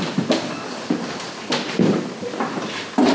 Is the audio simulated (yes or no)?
no